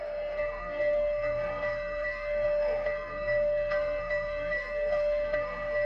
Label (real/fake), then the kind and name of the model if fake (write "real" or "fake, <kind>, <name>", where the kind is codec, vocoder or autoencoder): fake, codec, SNAC